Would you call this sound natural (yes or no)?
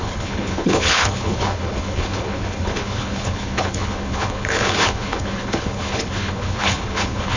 no